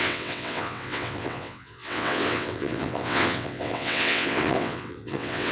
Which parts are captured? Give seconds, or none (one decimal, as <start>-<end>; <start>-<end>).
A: none